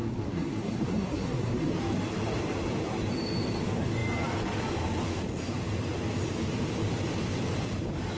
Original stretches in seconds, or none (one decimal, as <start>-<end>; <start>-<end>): 1.7-8.2